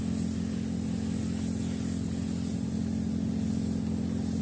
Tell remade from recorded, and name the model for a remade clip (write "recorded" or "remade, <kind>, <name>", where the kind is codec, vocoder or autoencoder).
recorded